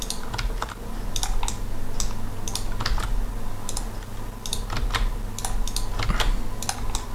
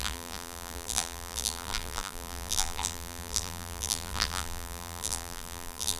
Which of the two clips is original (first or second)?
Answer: first